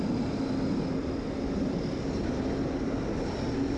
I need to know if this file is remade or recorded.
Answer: recorded